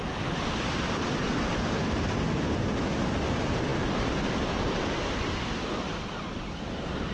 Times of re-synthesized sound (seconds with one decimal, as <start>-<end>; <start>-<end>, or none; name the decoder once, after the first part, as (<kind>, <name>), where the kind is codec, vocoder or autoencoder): none